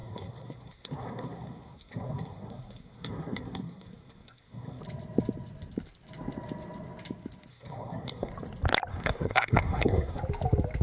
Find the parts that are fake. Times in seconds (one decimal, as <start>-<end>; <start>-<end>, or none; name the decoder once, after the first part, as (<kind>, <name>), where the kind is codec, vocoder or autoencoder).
0.0-4.8 (codec, SNAC); 7.5-8.3; 8.9-10.2